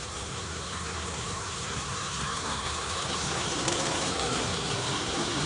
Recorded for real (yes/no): no